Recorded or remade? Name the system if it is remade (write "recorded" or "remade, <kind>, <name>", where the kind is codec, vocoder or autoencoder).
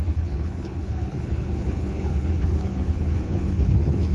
remade, codec, HILCodec